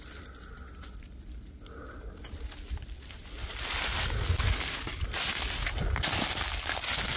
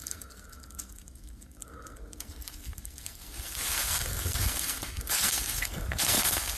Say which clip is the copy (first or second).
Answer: second